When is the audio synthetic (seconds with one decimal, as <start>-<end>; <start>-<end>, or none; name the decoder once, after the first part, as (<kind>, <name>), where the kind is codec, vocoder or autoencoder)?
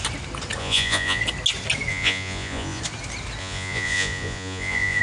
0.6-1.2 (vocoder, Vocos); 1.9-2.8; 3.4-5.0